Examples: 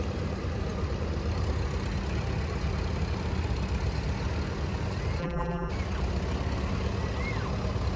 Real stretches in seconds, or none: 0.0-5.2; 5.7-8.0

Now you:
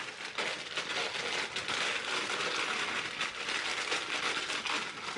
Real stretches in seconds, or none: 0.0-5.2

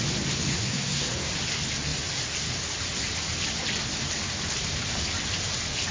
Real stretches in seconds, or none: 0.0-0.5; 1.3-5.9

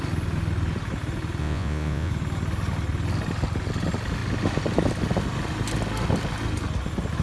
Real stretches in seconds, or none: 0.0-1.4; 2.1-7.2

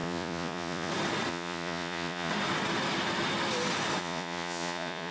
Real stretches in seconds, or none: 0.9-1.3; 2.3-4.0

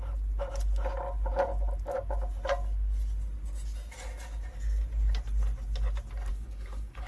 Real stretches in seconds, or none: 0.0-6.3

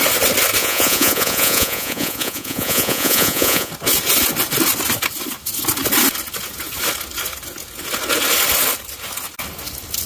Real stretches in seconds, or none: 0.0-0.6; 3.7-10.1

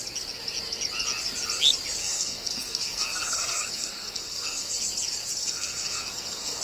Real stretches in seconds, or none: 0.0-2.0; 4.8-5.4